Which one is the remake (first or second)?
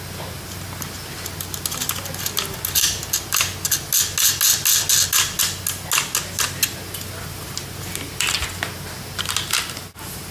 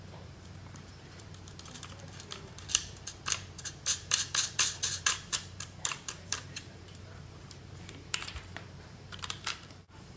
second